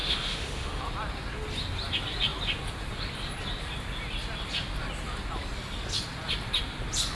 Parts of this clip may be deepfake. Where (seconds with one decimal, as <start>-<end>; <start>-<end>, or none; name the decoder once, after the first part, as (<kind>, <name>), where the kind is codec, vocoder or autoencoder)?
0.0-0.8 (autoencoder, DAC-VAE)